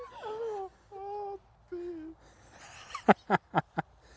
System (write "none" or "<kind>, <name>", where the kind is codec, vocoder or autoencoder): none